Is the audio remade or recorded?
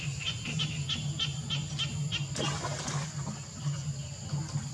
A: recorded